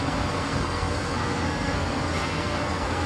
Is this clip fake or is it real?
fake